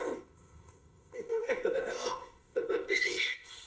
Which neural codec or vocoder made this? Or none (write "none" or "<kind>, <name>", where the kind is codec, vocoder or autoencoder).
codec, ZipCodec